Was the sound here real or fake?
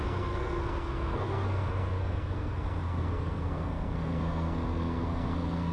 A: fake